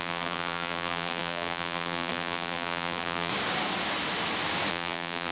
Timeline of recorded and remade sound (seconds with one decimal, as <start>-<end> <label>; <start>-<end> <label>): 0.0-3.3 remade; 3.3-4.7 recorded; 4.7-5.3 remade